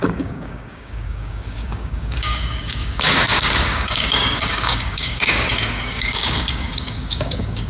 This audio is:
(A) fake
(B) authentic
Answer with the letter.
A